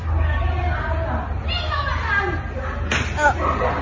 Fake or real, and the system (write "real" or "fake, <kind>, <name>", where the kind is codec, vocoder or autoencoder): real